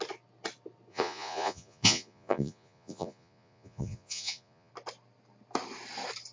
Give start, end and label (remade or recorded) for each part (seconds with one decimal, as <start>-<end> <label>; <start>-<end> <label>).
0.0-0.9 recorded; 0.9-4.7 remade; 4.7-6.3 recorded